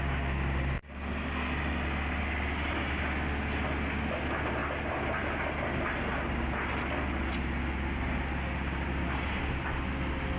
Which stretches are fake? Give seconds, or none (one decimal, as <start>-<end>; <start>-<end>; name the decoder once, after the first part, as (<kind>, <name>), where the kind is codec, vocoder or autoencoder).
none